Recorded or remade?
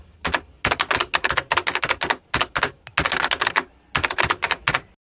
recorded